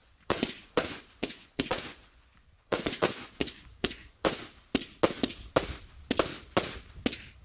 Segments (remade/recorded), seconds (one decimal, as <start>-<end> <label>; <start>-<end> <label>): 0.0-4.4 remade; 4.4-7.4 recorded